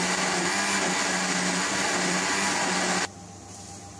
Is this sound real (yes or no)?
yes